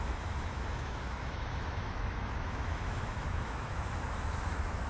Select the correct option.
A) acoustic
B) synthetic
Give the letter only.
B